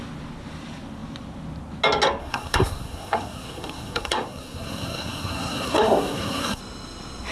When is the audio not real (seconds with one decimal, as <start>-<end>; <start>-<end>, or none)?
2.2-6.6